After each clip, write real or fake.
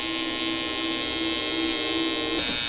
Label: real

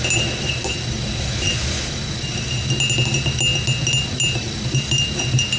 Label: real